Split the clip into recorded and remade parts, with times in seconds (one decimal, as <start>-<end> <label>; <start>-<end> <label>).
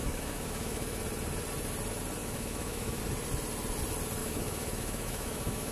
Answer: 0.0-1.0 remade; 1.0-2.2 recorded; 2.2-3.0 remade; 3.0-4.2 recorded; 4.2-5.7 remade